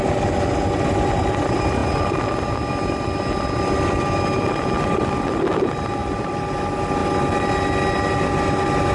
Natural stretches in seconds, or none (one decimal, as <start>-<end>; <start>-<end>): 0.0-8.9